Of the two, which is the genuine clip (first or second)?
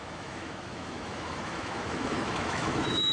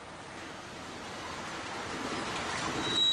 second